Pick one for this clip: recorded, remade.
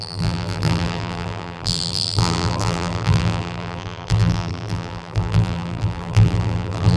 remade